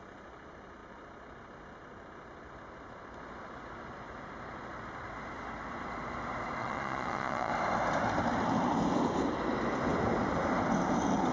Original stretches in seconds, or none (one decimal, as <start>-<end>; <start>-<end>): 0.0-6.6; 7.5-11.3